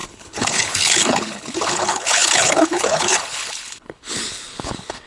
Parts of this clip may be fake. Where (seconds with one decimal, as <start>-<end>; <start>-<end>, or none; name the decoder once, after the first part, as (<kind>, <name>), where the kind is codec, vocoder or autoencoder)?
0.0-5.1 (codec, HILCodec)